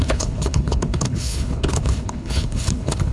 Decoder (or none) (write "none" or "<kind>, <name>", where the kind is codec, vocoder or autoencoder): codec, HILCodec